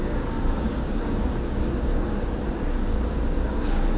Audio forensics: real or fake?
fake